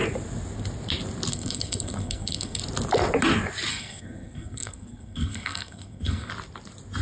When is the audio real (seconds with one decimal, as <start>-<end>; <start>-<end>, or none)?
0.0-1.3; 2.6-3.7; 6.3-7.0